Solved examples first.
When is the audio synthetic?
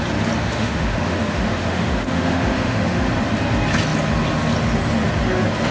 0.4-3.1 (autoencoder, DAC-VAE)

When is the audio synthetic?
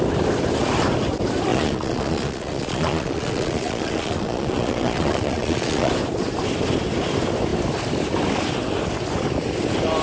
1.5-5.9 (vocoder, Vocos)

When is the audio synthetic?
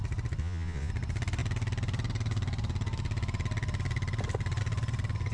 0.4-0.9 (vocoder, Vocos)